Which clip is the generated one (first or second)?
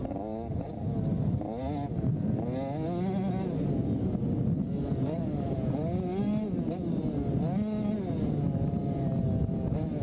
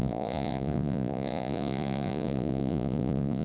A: second